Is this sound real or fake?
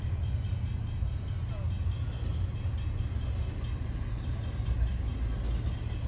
real